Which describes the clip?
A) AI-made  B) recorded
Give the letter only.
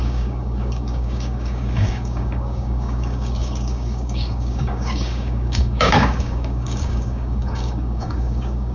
A